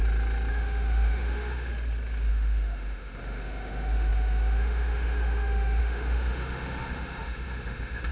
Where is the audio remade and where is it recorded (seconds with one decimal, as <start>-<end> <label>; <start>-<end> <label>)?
0.0-0.5 recorded; 0.5-1.7 remade; 1.7-2.3 recorded; 2.3-8.1 remade